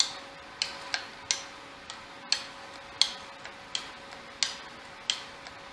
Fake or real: real